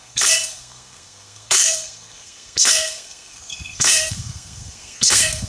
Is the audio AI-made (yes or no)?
yes